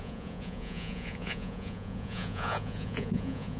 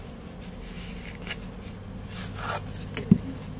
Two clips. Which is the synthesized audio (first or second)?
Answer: first